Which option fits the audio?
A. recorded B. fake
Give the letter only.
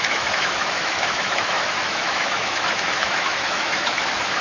B